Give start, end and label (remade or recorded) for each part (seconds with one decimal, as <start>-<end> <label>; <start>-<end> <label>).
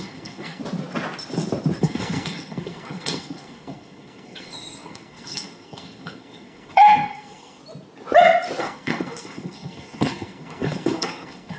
0.0-0.6 remade; 0.6-1.8 recorded; 1.8-7.6 remade; 7.6-8.6 recorded; 8.6-11.6 remade